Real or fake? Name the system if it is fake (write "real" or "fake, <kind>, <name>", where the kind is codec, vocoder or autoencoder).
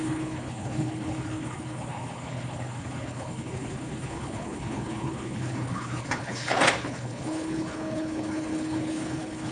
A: fake, codec, HILCodec